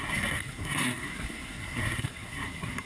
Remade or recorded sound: remade